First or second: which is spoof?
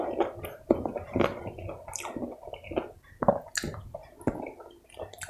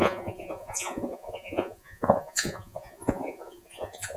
second